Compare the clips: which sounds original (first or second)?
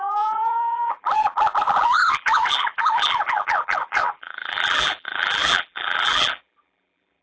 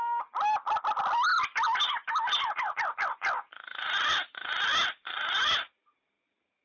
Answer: second